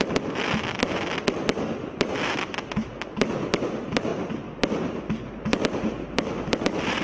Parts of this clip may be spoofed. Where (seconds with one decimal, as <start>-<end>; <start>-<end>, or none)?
none